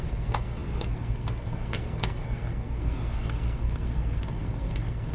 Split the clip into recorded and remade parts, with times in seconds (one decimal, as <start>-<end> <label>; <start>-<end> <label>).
0.0-5.1 remade